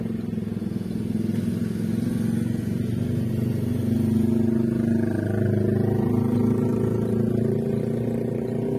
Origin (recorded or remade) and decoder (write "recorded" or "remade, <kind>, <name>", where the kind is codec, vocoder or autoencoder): recorded